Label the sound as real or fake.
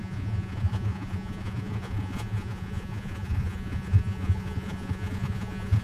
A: fake